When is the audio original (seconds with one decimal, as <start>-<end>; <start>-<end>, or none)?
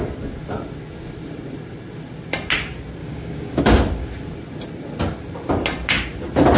0.0-3.0; 3.6-6.6